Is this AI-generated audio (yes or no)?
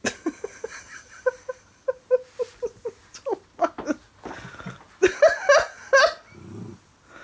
no